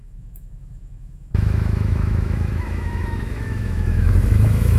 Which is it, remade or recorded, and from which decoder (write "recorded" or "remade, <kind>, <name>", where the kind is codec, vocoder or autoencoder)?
remade, autoencoder, DAC-VAE